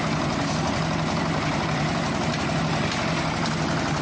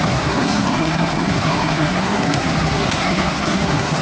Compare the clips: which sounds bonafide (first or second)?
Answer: first